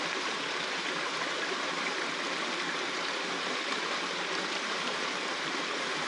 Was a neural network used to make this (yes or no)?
yes